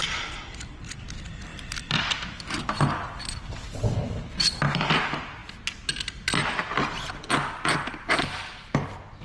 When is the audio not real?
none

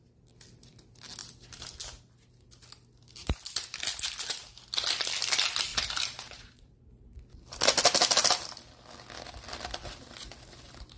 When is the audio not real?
5.7-6.8 (vocoder, BigVGAN v2)